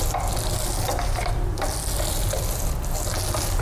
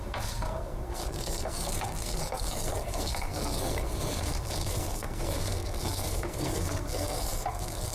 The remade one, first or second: second